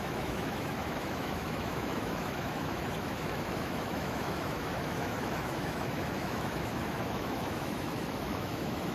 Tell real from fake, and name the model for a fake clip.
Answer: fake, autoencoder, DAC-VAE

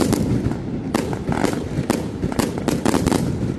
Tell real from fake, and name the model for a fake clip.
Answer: real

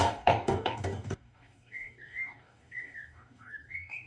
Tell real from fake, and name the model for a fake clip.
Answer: fake, codec, DAC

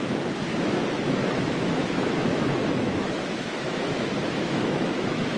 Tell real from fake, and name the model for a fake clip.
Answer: fake, autoencoder, DAC-VAE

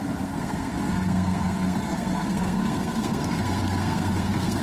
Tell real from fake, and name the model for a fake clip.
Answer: fake, codec, SNAC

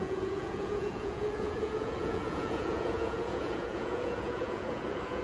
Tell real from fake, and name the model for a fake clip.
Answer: fake, vocoder, Vocos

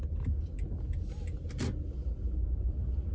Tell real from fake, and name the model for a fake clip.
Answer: real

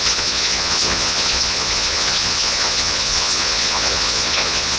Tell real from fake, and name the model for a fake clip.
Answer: fake, vocoder, Vocos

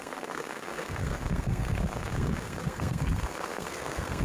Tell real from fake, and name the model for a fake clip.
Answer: fake, codec, SNAC